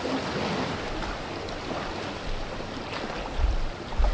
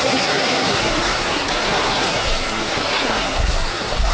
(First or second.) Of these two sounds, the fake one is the second